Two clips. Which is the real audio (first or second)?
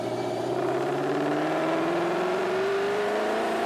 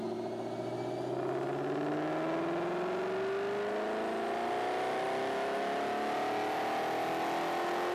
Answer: second